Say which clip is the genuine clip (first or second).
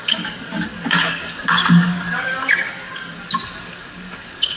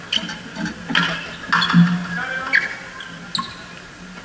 second